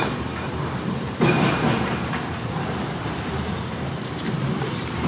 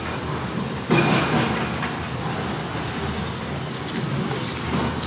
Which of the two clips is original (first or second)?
second